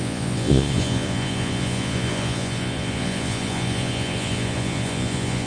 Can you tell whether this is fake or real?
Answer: fake